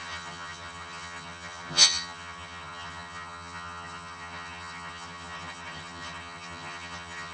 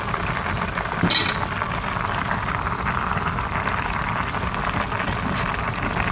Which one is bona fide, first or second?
second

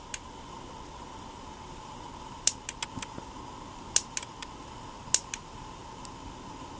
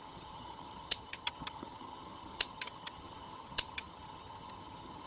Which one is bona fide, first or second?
first